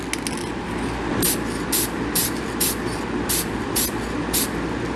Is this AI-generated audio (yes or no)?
no